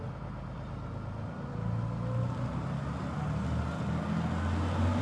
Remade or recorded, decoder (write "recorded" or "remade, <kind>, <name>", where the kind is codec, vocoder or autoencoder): recorded